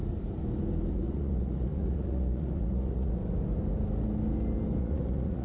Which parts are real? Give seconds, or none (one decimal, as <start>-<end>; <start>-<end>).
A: 0.0-0.9; 3.2-4.8